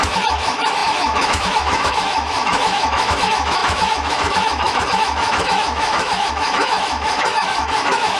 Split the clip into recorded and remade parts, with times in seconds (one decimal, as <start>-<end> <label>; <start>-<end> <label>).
0.0-8.2 remade